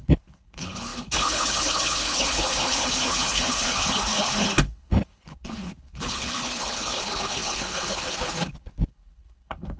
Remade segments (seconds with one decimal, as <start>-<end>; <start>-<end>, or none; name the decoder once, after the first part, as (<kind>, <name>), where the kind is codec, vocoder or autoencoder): 0.0-9.8 (codec, HILCodec)